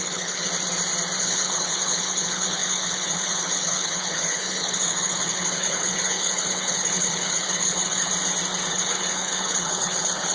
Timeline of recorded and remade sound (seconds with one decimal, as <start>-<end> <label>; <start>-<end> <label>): 0.0-0.5 remade; 0.5-1.2 recorded; 1.2-8.1 remade; 8.1-8.7 recorded; 8.7-10.3 remade